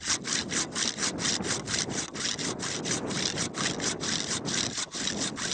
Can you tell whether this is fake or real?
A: real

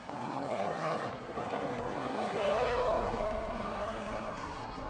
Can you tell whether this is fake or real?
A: fake